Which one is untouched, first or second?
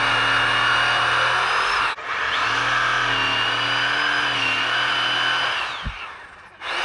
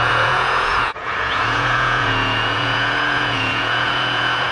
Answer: first